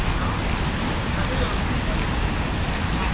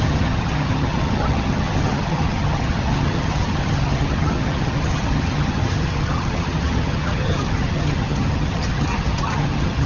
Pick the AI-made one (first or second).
second